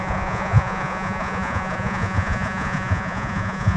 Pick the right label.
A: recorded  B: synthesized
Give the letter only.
B